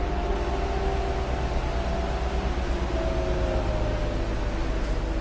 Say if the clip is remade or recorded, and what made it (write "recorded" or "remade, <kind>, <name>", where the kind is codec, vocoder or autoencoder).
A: recorded